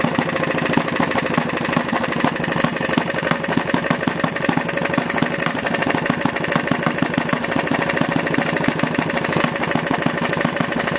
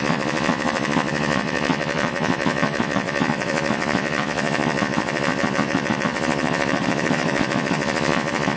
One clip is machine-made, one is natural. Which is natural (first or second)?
first